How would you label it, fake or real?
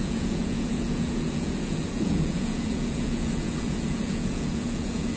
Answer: fake